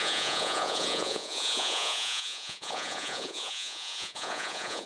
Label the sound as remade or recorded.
remade